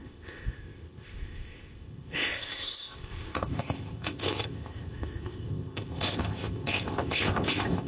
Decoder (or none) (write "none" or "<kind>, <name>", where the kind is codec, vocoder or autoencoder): codec, ZipCodec